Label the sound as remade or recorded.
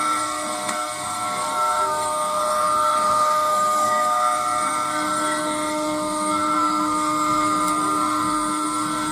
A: remade